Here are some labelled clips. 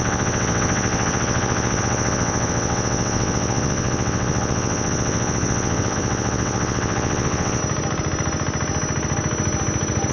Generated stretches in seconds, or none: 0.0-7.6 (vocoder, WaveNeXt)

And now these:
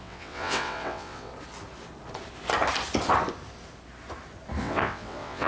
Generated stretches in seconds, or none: 0.0-1.3 (vocoder, WaveNeXt); 4.6-5.5

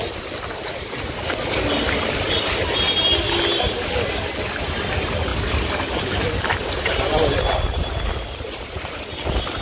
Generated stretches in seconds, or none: none

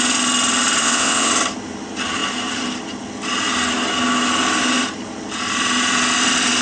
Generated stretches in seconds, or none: 0.8-1.3 (vocoder, WaveNeXt)

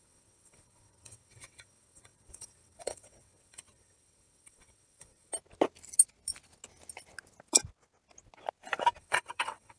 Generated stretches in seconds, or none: 0.0-5.3 (vocoder, WaveNeXt); 9.0-9.8